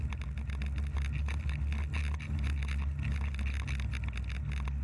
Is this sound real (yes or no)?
yes